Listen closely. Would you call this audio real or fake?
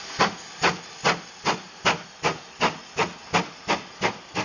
real